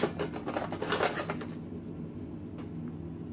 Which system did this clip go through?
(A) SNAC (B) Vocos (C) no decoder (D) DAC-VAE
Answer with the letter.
C